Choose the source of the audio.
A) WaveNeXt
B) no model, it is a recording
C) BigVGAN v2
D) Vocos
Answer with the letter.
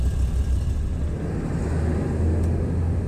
B